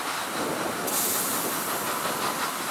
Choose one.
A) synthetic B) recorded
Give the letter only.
B